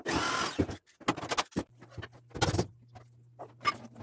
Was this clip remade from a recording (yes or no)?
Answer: no